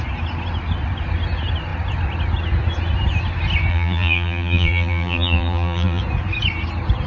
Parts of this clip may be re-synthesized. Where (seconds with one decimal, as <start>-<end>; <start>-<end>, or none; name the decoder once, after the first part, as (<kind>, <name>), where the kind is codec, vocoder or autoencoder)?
3.7-6.0 (vocoder, BigVGAN v2)